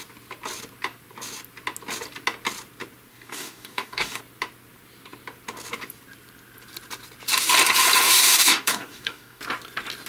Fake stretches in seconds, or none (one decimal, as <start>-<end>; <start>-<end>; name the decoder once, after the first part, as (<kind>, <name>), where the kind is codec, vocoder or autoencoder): 3.1-4.2 (codec, DAC); 8.2-9.4